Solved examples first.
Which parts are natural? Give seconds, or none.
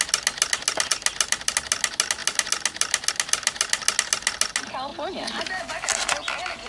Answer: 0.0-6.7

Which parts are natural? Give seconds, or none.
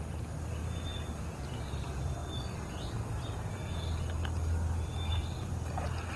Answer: 0.0-6.2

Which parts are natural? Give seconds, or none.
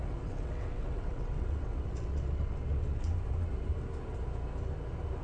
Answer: 3.1-5.2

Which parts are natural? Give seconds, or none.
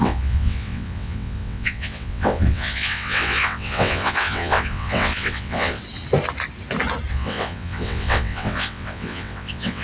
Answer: 5.8-7.1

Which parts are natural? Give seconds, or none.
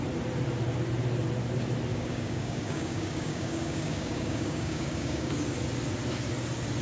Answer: 0.0-1.9; 5.3-6.8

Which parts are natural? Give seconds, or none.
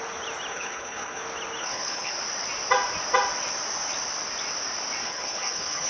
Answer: 0.0-0.5; 1.2-1.6; 2.1-5.0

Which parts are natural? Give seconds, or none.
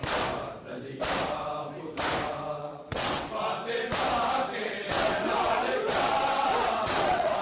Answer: 0.0-2.6; 3.4-4.6